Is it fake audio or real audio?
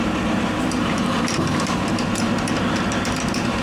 fake